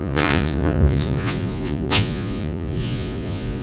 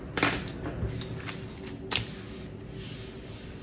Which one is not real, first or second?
first